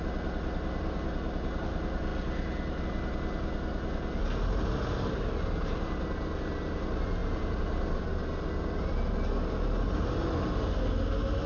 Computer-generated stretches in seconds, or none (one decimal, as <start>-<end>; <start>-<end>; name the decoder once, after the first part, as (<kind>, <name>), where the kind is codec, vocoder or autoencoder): none